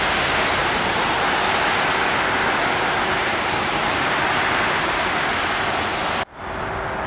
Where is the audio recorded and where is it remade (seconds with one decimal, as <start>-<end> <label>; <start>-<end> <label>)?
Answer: 0.0-0.6 recorded; 0.6-1.3 remade; 1.3-3.2 recorded; 3.2-4.3 remade; 4.3-7.1 recorded